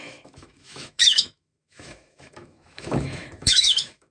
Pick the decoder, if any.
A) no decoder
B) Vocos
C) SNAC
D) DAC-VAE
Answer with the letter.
D